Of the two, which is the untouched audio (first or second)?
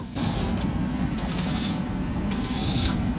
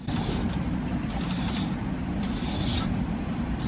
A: second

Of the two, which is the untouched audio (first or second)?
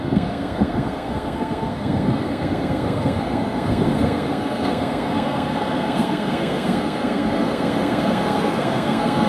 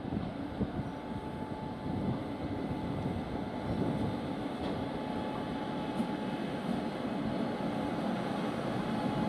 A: second